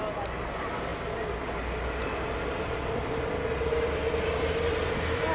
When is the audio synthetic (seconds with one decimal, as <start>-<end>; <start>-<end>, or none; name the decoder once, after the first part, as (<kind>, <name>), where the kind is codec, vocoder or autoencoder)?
none